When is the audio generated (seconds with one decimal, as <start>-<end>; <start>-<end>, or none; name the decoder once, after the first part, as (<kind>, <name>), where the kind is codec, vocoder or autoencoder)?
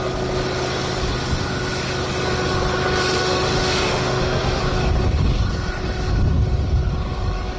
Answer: 3.2-4.6 (autoencoder, DAC-VAE)